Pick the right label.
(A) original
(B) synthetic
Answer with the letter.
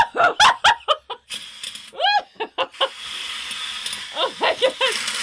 A